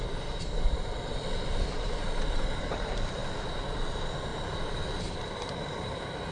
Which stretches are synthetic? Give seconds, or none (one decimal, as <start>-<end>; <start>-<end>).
0.0-3.2; 3.9-4.3; 5.0-6.3